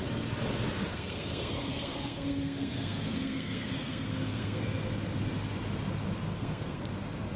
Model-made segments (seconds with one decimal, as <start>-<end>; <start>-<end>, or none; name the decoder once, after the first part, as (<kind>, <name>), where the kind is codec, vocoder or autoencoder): 0.9-4.6 (codec, SNAC); 6.3-6.9